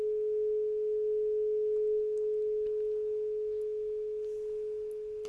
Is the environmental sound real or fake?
real